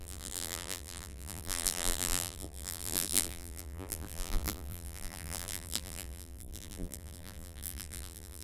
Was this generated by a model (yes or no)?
yes